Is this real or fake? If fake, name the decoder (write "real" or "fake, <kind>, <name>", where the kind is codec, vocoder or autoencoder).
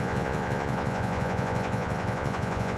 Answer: fake, vocoder, Vocos